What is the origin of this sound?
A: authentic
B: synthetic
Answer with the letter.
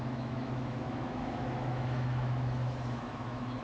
B